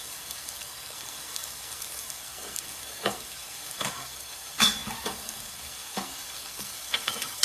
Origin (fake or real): fake